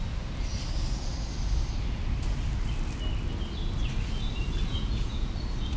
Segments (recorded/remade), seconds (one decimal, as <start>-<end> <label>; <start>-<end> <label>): 0.0-4.7 recorded; 4.7-5.3 remade; 5.3-5.8 recorded